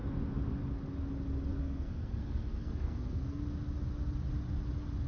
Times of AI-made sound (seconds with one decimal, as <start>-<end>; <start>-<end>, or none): 1.5-3.4

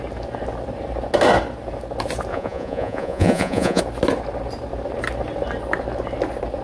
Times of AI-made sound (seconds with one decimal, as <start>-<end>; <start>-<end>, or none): 2.3-3.8

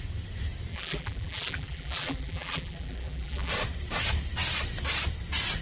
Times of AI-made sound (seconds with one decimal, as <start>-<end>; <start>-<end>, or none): 0.7-3.5

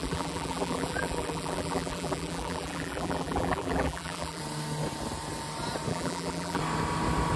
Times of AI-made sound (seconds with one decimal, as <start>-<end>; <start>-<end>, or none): 0.0-4.4; 5.9-6.6

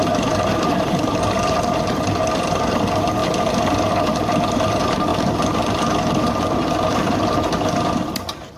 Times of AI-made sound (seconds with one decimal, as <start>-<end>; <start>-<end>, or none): 0.0-8.6

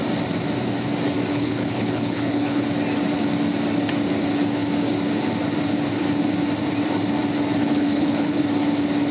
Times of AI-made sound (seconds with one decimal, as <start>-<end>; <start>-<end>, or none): 1.3-2.6; 7.6-8.4

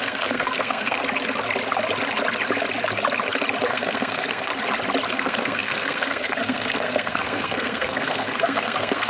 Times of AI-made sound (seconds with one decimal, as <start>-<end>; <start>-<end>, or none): 0.0-1.0; 3.7-4.5; 5.1-9.1